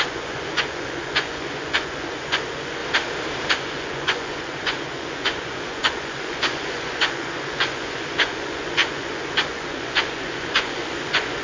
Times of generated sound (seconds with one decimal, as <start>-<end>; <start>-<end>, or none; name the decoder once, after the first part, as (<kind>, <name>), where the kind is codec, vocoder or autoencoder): 0.0-2.8 (vocoder, Vocos); 3.5-11.4